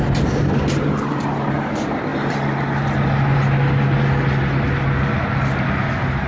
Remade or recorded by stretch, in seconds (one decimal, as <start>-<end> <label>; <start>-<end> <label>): 0.0-6.3 recorded